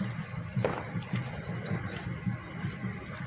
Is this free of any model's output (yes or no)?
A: no